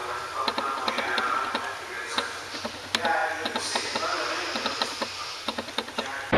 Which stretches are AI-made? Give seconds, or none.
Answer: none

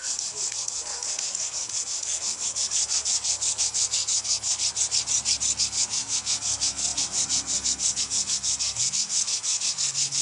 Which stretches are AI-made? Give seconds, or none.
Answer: 0.0-4.6 (codec, SNAC); 5.6-10.2

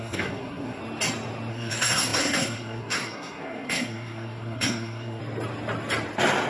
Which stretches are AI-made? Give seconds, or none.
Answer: 0.0-0.8 (codec, SNAC); 1.5-5.2

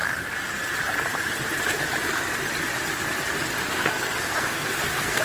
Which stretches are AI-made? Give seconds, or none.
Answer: 3.6-5.2 (codec, SNAC)

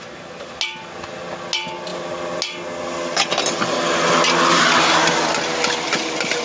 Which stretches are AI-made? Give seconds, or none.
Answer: none